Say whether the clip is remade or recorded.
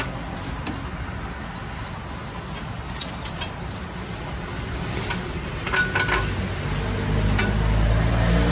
recorded